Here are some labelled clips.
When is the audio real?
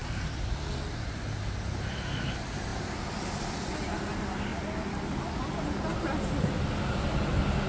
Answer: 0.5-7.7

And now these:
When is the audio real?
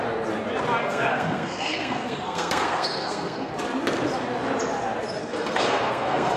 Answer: 0.0-0.8; 3.5-5.2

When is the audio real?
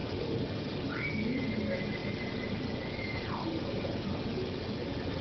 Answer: 0.0-5.2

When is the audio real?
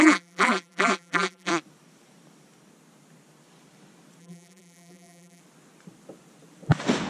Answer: 1.5-4.2; 5.4-7.1